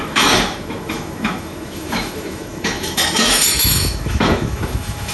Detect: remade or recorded remade